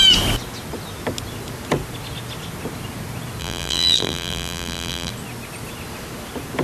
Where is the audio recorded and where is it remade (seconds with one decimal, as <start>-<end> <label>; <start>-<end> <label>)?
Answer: 0.0-3.4 recorded; 3.4-5.1 remade; 5.1-6.6 recorded